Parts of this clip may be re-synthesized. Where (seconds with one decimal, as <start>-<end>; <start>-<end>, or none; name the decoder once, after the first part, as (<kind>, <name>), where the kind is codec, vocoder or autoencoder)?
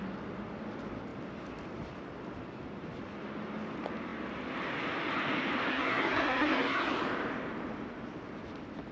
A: 5.7-6.9 (codec, SNAC)